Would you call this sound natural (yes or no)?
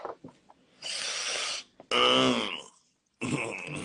yes